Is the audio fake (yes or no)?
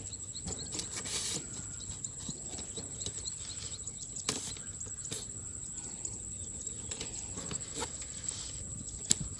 no